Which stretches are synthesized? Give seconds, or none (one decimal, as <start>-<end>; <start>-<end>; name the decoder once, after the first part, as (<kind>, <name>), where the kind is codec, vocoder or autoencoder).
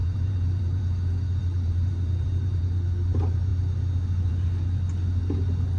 0.0-0.8 (vocoder, BigVGAN v2); 1.4-2.6